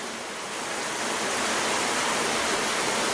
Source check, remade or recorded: recorded